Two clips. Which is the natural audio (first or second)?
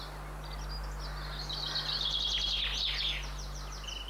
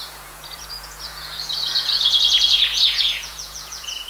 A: first